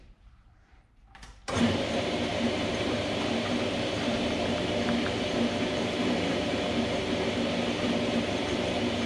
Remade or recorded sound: remade